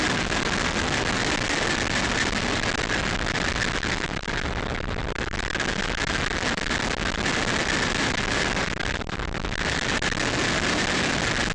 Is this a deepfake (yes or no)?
no